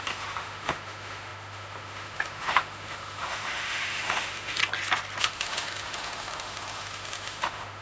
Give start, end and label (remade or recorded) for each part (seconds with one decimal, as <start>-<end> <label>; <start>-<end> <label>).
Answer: 0.0-4.6 remade; 4.6-5.2 recorded; 5.2-7.8 remade

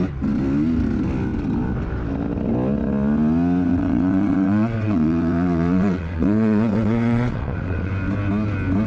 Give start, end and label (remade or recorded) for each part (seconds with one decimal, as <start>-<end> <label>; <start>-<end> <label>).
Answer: 0.0-3.7 recorded; 3.7-7.9 remade; 7.9-8.9 recorded

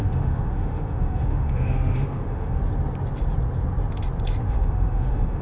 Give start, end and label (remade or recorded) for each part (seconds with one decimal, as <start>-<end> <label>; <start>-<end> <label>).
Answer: 0.0-2.6 remade; 2.6-4.4 recorded; 4.4-5.4 remade

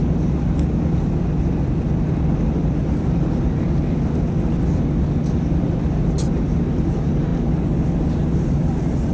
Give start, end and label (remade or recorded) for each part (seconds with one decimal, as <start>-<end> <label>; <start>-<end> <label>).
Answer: 0.0-9.1 recorded